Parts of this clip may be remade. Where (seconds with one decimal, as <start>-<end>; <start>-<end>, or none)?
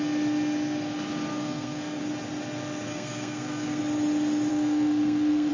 1.3-2.0; 2.9-3.8; 4.5-5.5